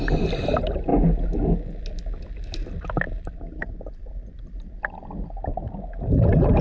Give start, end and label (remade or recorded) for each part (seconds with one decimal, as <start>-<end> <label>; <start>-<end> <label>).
0.0-6.6 recorded